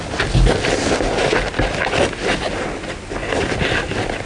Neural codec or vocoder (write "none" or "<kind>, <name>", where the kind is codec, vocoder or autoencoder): none